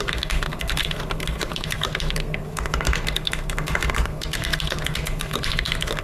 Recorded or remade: remade